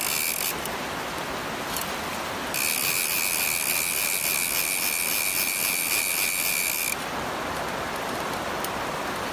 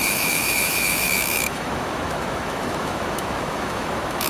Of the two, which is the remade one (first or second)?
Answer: second